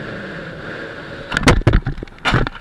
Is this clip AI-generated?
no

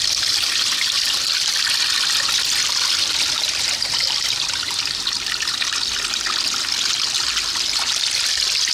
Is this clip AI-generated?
no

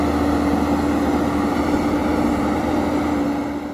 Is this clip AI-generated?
no